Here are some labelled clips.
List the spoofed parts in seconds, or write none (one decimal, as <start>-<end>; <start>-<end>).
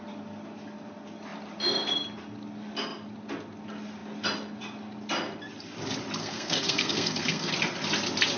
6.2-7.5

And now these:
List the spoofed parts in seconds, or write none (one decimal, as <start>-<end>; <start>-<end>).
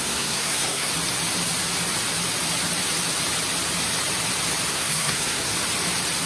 0.0-0.9; 4.7-5.5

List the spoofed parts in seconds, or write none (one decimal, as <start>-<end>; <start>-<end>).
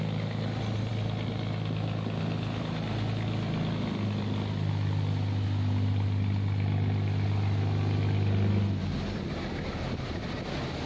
none